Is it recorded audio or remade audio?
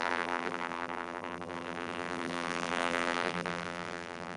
remade